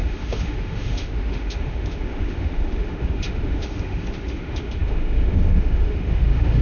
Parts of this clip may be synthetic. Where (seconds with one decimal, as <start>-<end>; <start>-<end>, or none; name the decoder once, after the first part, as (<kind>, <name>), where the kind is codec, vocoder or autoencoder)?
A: 0.0-6.6 (autoencoder, DAC-VAE)